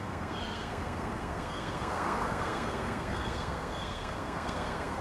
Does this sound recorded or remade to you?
remade